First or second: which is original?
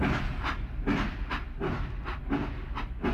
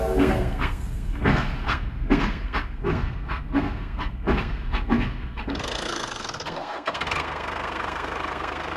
first